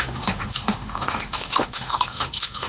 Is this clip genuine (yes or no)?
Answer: no